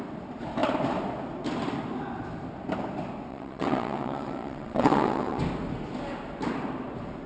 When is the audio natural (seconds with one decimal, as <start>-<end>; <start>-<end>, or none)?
0.0-3.3; 5.4-7.3

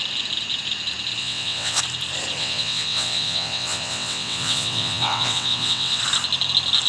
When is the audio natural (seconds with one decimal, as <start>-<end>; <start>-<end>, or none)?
0.0-1.2; 1.8-2.4; 6.0-6.9

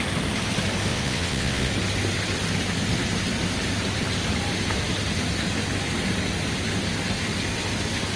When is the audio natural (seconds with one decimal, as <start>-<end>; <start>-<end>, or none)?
0.0-0.9; 1.7-8.2